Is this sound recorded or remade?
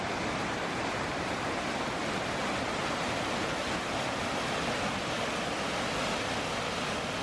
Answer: recorded